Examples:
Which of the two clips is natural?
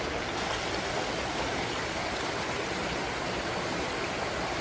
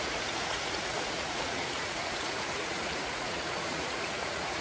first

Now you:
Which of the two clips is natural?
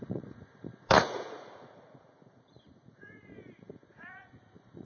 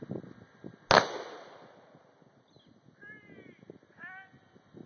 second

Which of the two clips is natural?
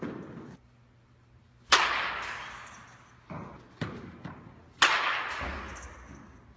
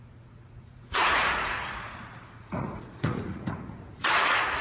first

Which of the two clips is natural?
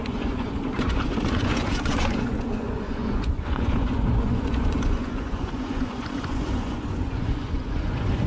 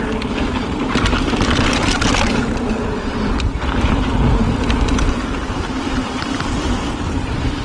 second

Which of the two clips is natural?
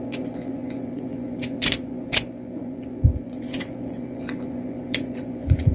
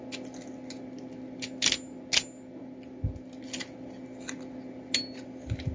second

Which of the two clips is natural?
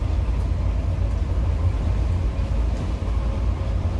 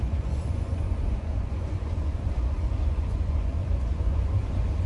first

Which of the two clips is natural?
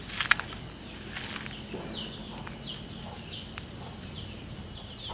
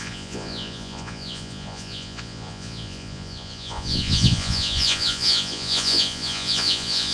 first